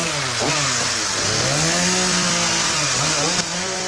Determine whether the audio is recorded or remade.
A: recorded